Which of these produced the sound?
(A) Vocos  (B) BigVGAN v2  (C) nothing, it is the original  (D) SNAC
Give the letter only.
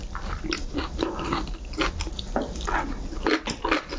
C